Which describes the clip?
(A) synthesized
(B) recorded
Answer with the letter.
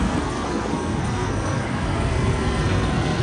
A